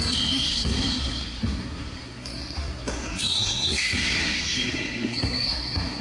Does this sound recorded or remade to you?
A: remade